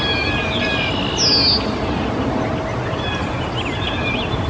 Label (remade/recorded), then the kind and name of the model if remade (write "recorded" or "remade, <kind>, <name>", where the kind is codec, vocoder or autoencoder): recorded